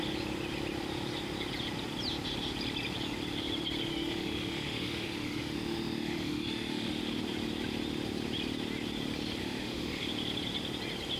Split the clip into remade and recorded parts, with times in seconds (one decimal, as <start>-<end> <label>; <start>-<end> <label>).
0.0-3.9 recorded; 3.9-7.0 remade; 7.0-9.4 recorded; 9.4-10.1 remade; 10.1-11.2 recorded